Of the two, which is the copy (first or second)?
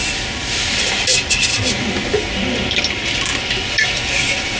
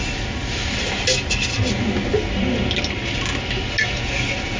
first